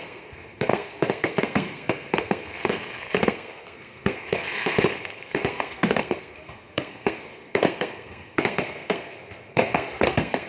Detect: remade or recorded remade